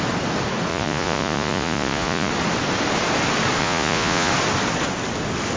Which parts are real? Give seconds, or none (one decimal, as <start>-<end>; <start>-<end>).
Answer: 0.0-0.7; 2.3-3.6; 4.3-5.6